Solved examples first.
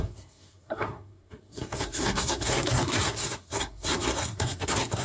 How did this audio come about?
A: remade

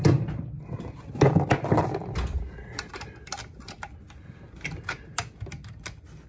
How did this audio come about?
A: recorded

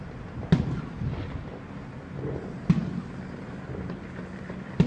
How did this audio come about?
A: recorded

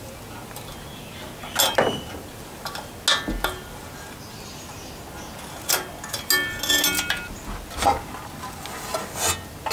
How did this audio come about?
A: recorded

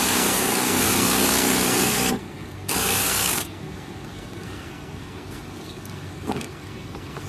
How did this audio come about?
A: remade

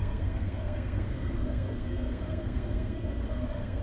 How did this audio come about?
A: remade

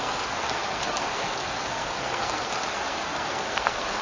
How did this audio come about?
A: remade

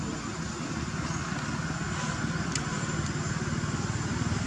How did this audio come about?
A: recorded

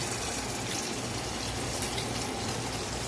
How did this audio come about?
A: recorded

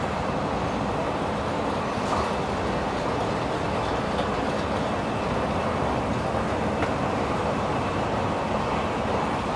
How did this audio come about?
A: recorded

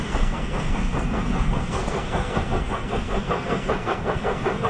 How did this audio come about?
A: remade